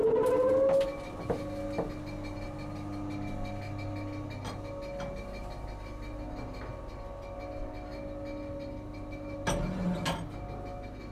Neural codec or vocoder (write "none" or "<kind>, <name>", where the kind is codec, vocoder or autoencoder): none